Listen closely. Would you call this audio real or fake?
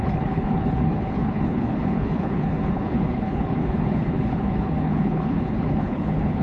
fake